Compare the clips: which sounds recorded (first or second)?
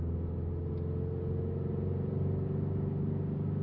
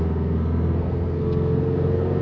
first